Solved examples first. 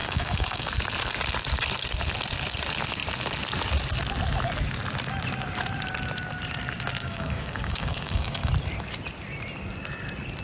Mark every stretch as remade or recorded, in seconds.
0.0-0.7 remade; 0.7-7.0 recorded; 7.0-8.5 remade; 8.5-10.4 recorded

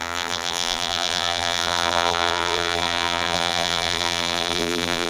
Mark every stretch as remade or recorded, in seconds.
0.0-5.1 remade